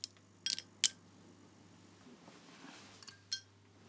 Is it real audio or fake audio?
real